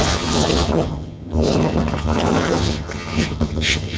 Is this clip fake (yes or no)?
yes